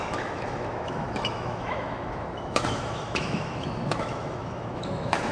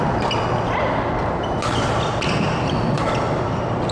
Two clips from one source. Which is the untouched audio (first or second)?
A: second